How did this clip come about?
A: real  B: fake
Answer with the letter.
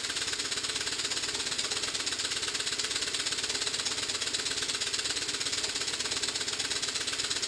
A